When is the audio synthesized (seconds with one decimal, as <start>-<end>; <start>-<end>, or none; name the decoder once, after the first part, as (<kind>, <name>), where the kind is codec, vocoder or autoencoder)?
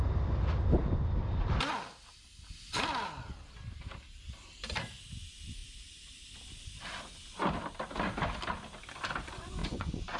9.6-10.2 (vocoder, Vocos)